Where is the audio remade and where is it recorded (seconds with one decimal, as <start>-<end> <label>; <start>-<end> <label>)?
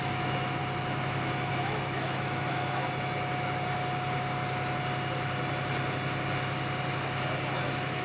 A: 0.0-0.6 remade; 0.6-1.5 recorded; 1.5-2.8 remade; 2.8-7.6 recorded; 7.6-8.0 remade